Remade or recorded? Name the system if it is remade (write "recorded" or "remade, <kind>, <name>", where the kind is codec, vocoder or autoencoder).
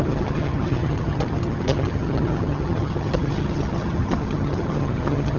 remade, vocoder, HiFi-GAN